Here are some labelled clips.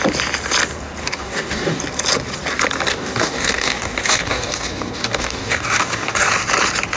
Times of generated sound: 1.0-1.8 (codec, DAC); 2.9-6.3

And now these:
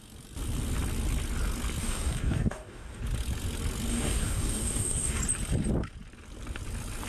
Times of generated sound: 1.8-3.0 (codec, DAC); 3.9-5.2

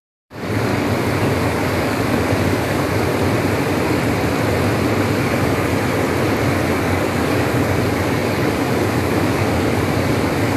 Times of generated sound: 0.0-0.7 (codec, DAC); 1.2-3.1; 5.2-5.7; 6.8-10.6